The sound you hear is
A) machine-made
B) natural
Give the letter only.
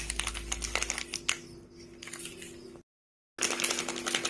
B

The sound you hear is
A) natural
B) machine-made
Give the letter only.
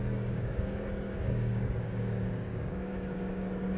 B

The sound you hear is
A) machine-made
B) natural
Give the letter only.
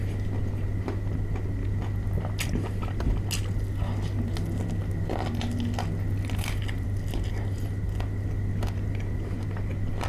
B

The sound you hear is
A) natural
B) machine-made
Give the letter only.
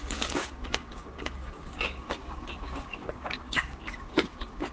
B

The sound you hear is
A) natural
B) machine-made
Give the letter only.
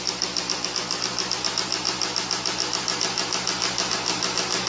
A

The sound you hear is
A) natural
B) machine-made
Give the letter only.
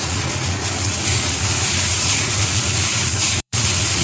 B